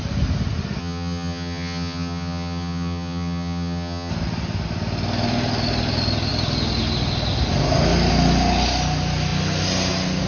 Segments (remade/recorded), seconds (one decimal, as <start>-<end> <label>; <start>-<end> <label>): 0.0-0.8 recorded; 0.8-4.1 remade; 4.1-10.3 recorded